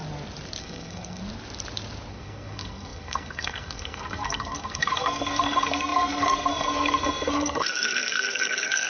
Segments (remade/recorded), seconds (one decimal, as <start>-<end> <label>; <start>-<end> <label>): 0.0-0.6 recorded; 0.6-1.2 remade; 1.2-2.1 recorded; 2.1-8.9 remade